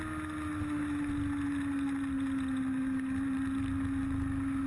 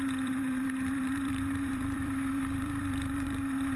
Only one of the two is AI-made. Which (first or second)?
second